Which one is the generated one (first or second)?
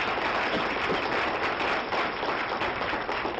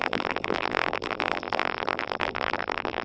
second